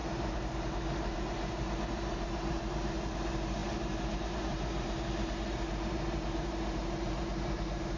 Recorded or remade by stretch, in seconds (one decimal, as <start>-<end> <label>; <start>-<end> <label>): 0.0-8.0 remade